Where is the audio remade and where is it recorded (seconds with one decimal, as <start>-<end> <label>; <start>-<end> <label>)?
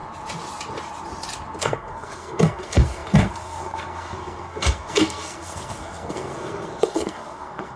0.0-1.6 recorded; 1.6-7.8 remade